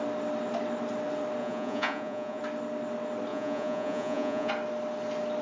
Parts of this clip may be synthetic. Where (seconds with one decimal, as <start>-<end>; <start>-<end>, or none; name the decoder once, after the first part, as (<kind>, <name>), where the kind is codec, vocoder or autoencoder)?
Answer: 1.4-2.4 (vocoder, Vocos); 3.3-4.5